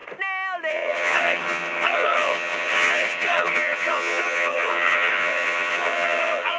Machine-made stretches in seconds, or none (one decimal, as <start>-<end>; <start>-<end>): 0.7-6.6